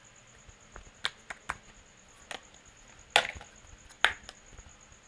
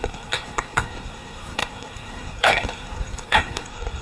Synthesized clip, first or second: second